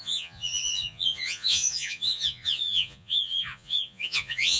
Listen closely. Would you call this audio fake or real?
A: fake